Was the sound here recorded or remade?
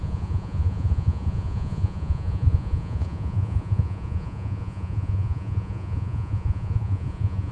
remade